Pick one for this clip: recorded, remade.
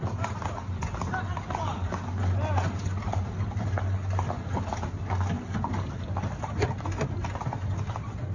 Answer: recorded